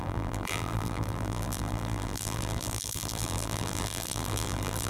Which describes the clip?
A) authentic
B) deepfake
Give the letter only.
B